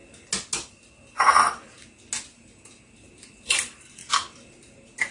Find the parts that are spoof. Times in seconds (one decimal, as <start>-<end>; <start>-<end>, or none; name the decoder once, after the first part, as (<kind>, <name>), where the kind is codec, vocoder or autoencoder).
3.1-4.0 (vocoder, BigVGAN v2); 4.5-5.1